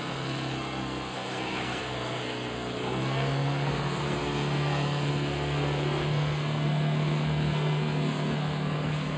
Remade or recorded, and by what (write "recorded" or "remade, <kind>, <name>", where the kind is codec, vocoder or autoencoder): remade, codec, SNAC